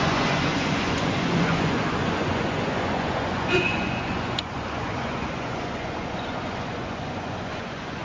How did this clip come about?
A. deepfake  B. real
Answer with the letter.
A